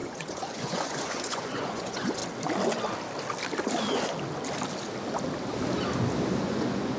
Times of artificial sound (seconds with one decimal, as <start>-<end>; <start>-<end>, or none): 0.0-2.2; 6.4-7.0